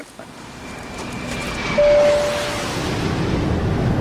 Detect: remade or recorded recorded